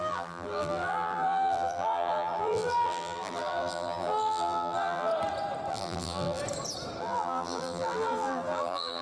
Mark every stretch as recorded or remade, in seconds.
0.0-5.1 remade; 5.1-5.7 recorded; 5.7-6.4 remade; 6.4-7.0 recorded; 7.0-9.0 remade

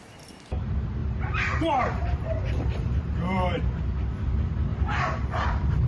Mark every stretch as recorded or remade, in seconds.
0.0-1.0 recorded; 1.0-3.6 remade; 3.6-4.7 recorded; 4.7-5.9 remade

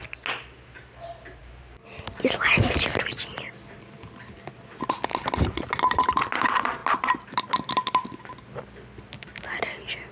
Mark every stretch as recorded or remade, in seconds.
0.0-1.4 recorded; 1.4-3.5 remade; 3.5-6.8 recorded; 6.8-7.4 remade; 7.4-10.1 recorded

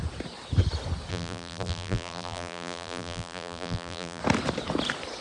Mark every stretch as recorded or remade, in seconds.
0.0-1.1 recorded; 1.1-4.2 remade; 4.2-5.2 recorded